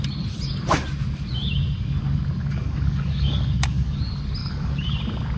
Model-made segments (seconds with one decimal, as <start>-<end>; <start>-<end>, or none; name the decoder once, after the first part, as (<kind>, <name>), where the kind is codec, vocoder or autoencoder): 2.4-4.0 (codec, DAC); 4.4-5.0